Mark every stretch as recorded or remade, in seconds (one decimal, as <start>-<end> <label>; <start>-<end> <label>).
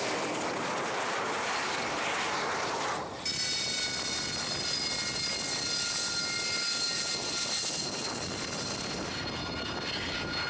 0.0-10.5 recorded